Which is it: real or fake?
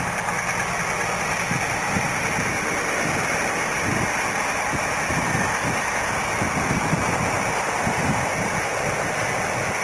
real